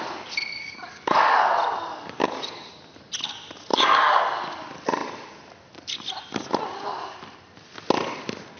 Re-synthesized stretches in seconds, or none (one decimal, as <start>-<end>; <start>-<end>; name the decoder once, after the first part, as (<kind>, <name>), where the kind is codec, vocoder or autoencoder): 0.6-1.4 (codec, DAC); 1.9-2.7; 3.7-4.2